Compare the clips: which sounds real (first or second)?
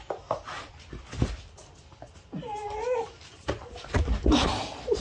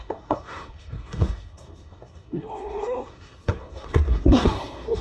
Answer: first